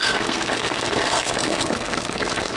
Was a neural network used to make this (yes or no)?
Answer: yes